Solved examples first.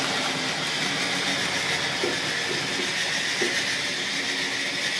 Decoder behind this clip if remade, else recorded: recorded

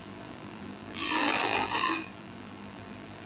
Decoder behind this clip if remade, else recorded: remade, vocoder, BigVGAN v2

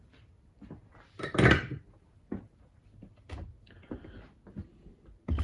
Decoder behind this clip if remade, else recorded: recorded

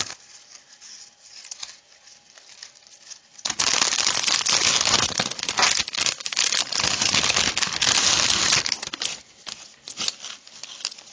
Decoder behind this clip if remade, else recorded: recorded